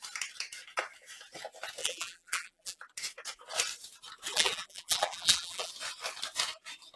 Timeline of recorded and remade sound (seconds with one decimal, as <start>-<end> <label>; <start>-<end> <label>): 0.0-1.8 recorded; 1.8-2.8 remade; 2.8-4.3 recorded; 4.3-5.7 remade; 5.7-7.0 recorded